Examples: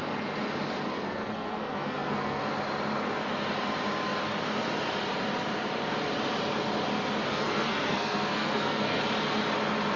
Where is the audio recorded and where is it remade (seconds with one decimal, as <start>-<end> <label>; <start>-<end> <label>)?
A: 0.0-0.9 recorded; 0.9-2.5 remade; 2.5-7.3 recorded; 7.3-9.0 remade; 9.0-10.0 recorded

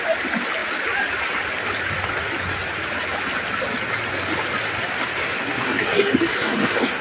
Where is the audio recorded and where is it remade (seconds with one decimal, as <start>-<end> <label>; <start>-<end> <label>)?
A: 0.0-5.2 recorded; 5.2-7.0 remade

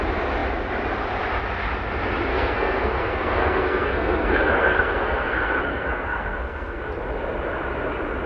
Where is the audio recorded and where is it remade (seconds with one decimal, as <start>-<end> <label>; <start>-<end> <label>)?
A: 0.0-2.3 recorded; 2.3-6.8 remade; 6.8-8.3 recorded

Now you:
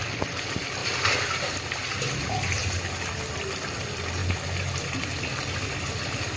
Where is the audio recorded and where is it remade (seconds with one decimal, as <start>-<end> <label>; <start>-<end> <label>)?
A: 0.0-6.4 recorded